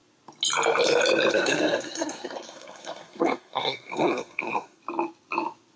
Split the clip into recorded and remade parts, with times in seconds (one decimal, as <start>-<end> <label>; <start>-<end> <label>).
0.0-1.3 recorded; 1.3-4.8 remade; 4.8-5.8 recorded